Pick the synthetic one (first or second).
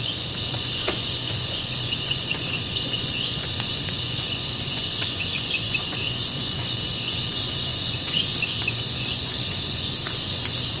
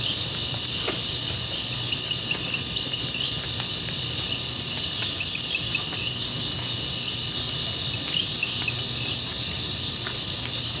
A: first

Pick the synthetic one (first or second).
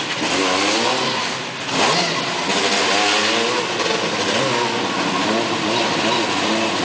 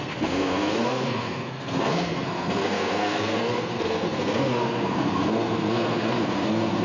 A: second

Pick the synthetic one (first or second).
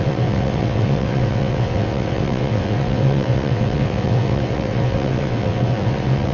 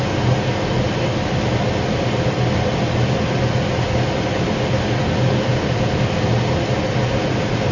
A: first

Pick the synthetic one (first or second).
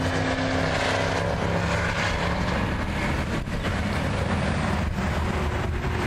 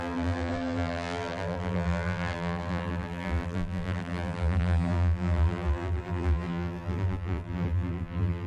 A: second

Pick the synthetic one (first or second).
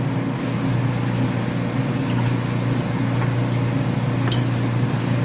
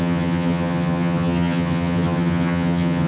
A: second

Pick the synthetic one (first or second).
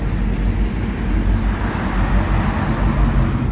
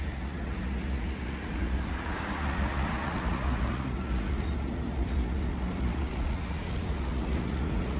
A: second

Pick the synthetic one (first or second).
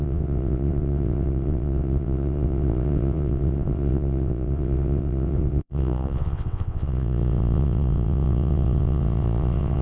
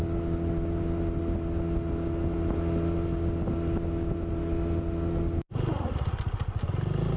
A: first